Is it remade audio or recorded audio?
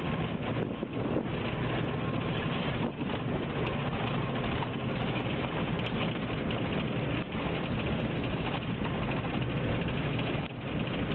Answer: recorded